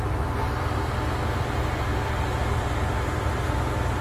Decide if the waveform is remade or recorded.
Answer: recorded